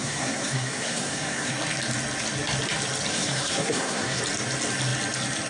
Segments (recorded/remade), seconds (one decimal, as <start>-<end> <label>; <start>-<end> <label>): 0.0-1.5 remade; 1.5-3.1 recorded; 3.1-4.2 remade; 4.2-5.5 recorded

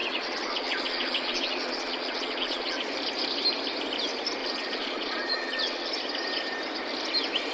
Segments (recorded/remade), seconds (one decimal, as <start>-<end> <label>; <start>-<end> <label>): 0.0-2.9 remade; 2.9-4.4 recorded; 4.4-5.9 remade; 5.9-7.5 recorded

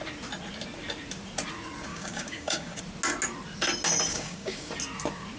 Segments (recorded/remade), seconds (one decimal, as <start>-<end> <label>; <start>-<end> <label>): 0.0-1.9 recorded; 1.9-2.8 remade; 2.8-4.1 recorded; 4.1-4.7 remade; 4.7-5.4 recorded

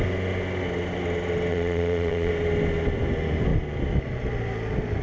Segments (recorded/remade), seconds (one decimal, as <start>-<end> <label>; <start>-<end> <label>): 0.0-1.5 recorded; 1.5-2.3 remade; 2.3-5.0 recorded

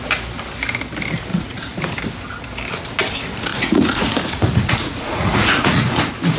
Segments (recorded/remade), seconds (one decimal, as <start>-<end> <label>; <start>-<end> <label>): 0.0-1.3 recorded; 1.3-2.0 remade; 2.0-3.5 recorded; 3.5-6.0 remade; 6.0-6.4 recorded

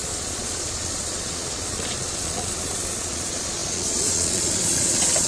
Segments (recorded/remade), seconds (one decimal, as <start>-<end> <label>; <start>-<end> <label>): 0.0-5.3 remade

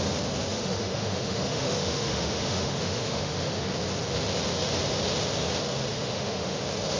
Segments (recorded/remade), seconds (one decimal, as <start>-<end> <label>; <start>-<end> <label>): 0.0-0.5 recorded; 0.5-3.7 remade; 3.7-5.9 recorded; 5.9-6.6 remade; 6.6-7.0 recorded